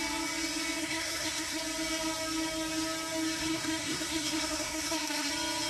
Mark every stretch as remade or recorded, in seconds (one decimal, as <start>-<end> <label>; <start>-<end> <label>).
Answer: 0.0-0.8 recorded; 0.8-1.6 remade; 1.6-3.4 recorded; 3.4-5.3 remade; 5.3-5.7 recorded